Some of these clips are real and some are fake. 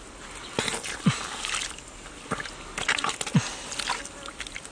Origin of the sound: real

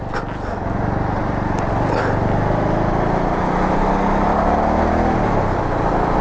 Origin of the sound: real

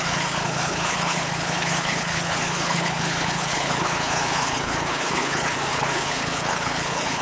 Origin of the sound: fake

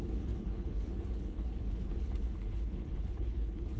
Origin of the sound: fake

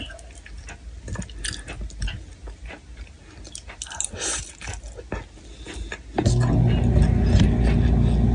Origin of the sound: real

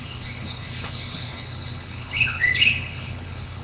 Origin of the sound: fake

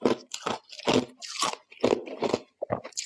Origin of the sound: real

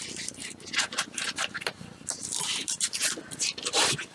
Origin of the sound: real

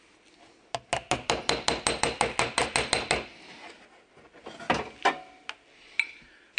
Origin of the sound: real